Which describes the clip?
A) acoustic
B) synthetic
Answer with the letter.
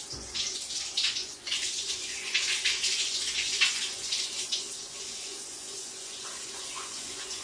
B